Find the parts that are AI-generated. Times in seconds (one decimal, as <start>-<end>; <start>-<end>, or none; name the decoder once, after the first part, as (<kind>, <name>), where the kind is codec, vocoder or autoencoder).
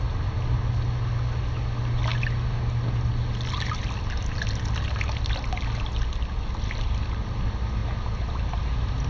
none